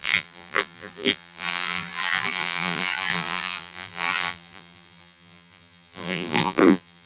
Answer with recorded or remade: remade